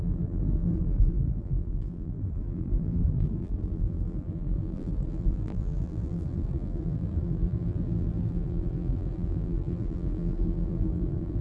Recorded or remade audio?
remade